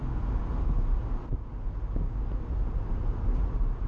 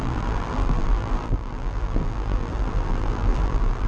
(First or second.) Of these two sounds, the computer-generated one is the second